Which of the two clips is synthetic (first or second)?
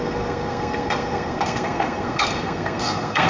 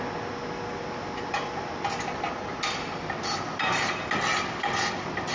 first